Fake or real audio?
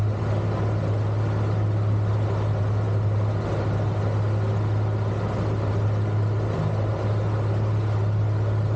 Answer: real